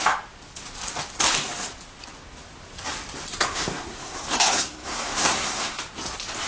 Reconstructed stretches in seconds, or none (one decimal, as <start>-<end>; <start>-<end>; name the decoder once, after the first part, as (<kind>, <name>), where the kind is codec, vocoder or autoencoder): 3.3-5.8 (codec, SNAC)